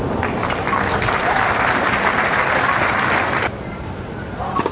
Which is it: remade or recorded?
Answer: remade